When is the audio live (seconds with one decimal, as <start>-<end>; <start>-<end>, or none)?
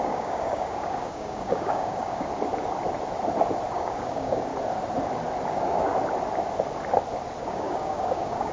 2.3-3.7; 4.5-5.5; 5.9-7.4